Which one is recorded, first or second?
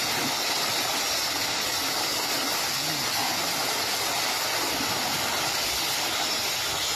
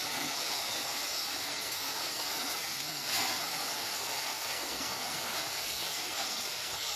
first